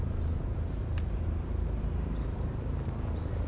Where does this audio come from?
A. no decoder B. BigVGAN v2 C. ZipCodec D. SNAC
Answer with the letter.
A